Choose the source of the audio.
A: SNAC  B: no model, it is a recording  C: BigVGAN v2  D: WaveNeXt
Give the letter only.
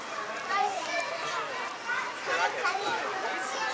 C